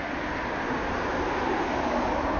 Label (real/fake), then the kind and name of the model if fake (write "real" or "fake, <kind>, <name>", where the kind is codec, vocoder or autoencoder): real